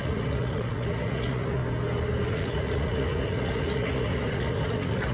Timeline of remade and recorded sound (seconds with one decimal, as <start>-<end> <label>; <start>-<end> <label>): 0.0-1.6 remade; 1.6-2.3 recorded; 2.3-5.1 remade